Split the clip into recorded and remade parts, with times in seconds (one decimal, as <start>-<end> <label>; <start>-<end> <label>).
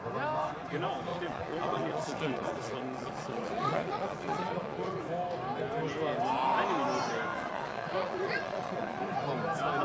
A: 0.0-1.1 recorded; 1.1-5.0 remade; 5.0-7.3 recorded; 7.3-9.0 remade; 9.0-9.8 recorded